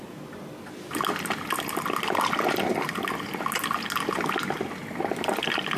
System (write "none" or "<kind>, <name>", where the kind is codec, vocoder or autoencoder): none